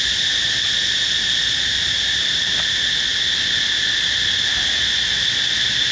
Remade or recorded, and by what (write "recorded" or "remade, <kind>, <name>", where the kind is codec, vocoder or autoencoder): recorded